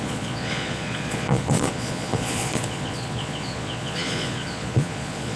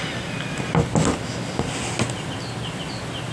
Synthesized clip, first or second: first